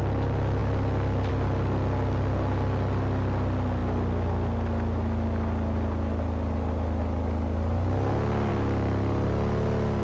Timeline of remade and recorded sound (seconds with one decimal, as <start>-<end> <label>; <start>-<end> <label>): 0.0-10.0 recorded